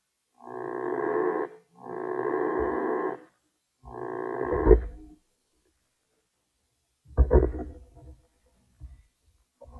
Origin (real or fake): real